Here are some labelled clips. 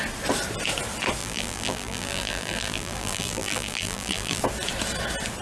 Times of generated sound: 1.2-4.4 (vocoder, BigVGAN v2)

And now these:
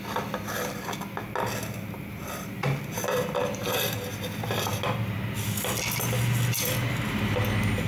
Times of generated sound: none

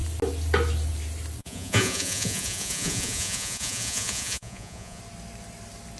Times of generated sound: 1.4-5.0 (vocoder, Vocos)

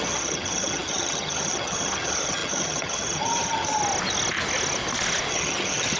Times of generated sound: 0.0-3.8 (vocoder, HiFi-GAN); 5.3-6.0

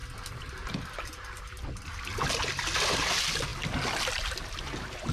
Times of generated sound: none

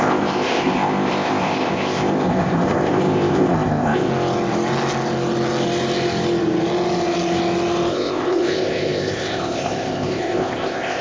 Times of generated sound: 0.0-4.1 (codec, ZipCodec); 7.9-11.0

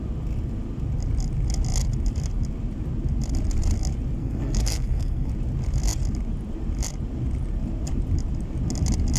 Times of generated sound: 4.2-5.3 (codec, SNAC)